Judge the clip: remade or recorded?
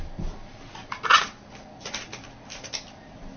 recorded